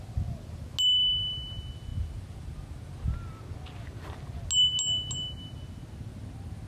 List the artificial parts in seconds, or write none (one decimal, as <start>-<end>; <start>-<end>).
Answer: none